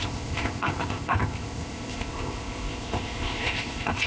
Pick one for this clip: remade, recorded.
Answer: remade